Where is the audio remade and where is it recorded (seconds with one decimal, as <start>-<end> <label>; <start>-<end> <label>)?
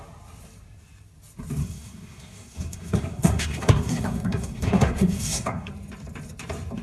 0.0-1.6 recorded; 1.6-5.7 remade; 5.7-6.8 recorded